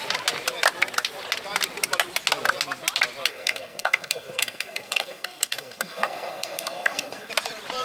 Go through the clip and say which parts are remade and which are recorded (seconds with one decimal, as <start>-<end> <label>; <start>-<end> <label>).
0.0-3.3 recorded; 3.3-7.3 remade; 7.3-7.8 recorded